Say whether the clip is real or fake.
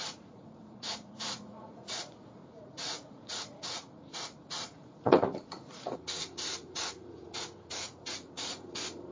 fake